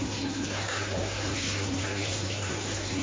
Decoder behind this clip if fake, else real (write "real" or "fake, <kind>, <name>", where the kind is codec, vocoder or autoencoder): fake, codec, SNAC